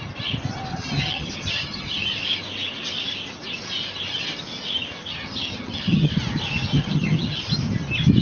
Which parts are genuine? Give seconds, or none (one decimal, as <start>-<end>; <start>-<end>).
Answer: 0.0-0.7; 2.2-5.1; 6.1-6.7; 7.4-8.2